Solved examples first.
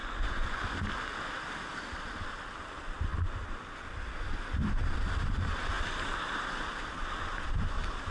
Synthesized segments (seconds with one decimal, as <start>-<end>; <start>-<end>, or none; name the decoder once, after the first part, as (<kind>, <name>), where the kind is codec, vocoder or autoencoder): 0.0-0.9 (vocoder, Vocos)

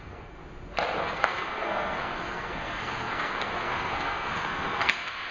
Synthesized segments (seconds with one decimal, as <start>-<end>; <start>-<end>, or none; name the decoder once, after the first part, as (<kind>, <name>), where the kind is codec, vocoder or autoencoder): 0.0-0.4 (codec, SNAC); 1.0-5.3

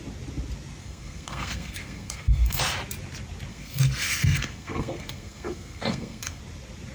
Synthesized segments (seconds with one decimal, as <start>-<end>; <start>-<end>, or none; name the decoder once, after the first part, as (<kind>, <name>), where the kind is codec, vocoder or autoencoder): 0.8-2.6 (codec, SNAC); 3.5-6.4

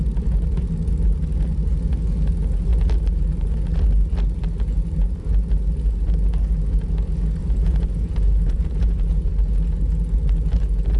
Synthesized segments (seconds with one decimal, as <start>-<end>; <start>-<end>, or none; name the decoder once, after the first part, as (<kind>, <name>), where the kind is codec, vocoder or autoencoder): 7.4-9.3 (vocoder, Vocos)

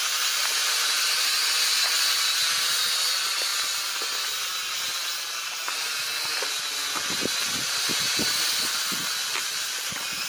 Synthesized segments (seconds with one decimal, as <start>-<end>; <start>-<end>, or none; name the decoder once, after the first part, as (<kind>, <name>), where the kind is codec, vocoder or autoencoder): 0.6-1.2 (vocoder, BigVGAN v2)

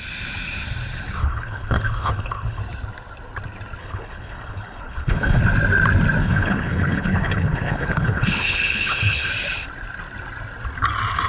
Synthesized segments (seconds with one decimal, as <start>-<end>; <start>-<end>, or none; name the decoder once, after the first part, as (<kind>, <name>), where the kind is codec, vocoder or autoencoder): 1.2-2.6 (codec, HILCodec); 3.8-5.4; 6.2-9.3